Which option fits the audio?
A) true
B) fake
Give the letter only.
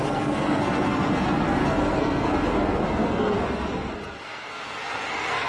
B